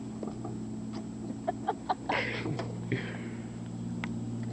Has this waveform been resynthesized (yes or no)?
no